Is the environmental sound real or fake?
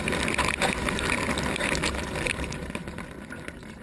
fake